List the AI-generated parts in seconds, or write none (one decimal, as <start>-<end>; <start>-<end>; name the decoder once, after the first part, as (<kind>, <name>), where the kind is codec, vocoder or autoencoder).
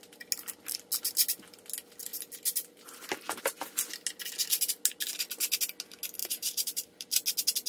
6.2-7.1 (vocoder, BigVGAN v2)